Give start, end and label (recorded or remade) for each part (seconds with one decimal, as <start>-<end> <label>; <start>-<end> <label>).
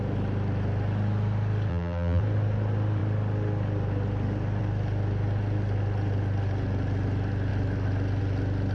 0.0-1.7 recorded; 1.7-2.2 remade; 2.2-8.7 recorded